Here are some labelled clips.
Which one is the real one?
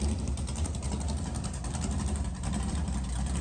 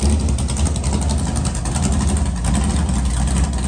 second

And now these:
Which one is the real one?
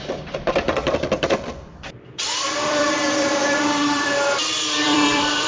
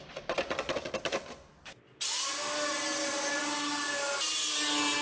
second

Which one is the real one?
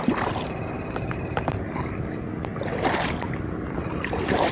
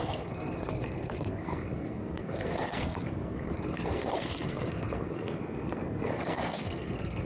first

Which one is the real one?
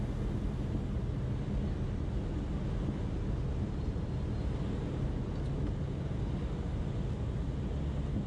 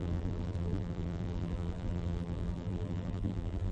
first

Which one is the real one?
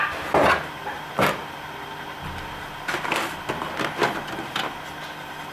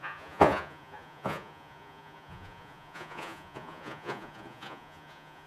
first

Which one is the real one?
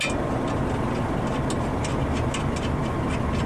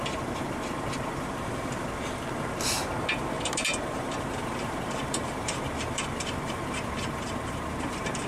first